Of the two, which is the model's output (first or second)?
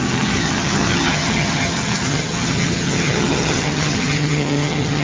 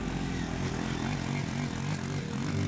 first